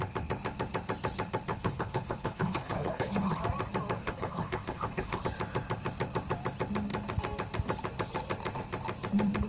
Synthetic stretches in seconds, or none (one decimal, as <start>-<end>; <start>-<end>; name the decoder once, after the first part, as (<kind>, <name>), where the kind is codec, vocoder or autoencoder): 1.5-3.4 (codec, HILCodec); 4.0-5.2